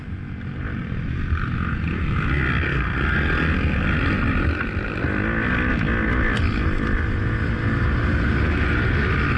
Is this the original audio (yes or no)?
yes